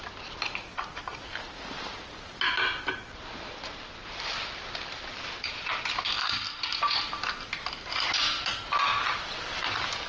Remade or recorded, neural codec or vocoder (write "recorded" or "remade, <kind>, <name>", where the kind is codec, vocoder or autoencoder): recorded